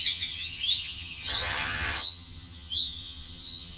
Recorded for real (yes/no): no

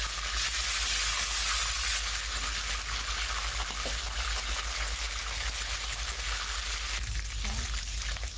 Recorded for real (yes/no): yes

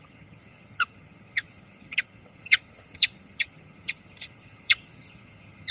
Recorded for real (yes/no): no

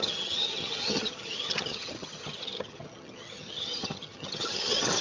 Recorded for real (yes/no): no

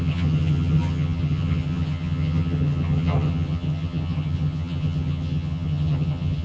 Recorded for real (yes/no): no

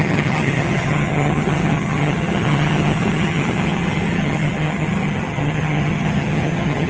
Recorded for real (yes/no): no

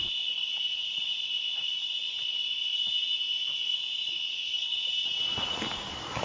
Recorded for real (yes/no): yes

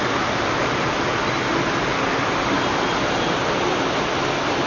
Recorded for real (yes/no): yes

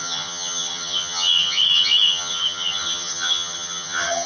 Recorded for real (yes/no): no